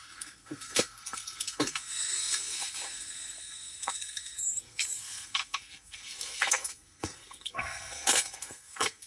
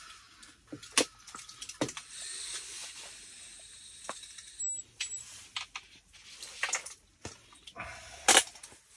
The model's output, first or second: first